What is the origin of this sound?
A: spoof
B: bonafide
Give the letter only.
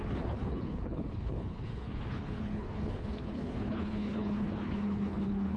A